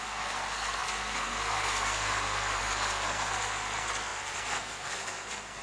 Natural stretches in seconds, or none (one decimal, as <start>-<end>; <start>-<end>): none